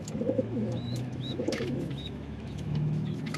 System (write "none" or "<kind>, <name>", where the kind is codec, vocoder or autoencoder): autoencoder, DAC-VAE